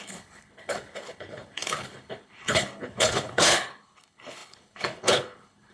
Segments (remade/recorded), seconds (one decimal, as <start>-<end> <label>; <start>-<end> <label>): 0.0-5.7 remade